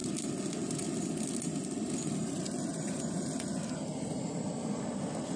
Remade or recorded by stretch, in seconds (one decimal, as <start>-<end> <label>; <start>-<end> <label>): 0.0-2.7 recorded; 2.7-3.2 remade; 3.2-5.4 recorded